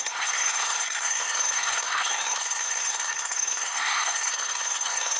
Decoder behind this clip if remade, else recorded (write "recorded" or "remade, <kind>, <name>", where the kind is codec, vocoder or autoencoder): remade, codec, SNAC